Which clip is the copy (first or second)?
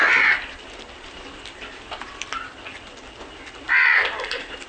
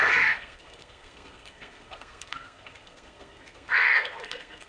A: second